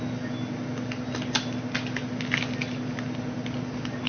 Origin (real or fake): real